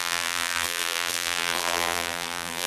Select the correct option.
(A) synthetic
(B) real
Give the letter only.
A